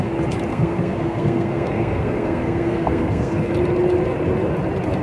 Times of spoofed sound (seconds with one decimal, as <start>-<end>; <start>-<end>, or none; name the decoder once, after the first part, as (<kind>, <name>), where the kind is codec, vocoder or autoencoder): 0.5-3.5 (codec, SNAC)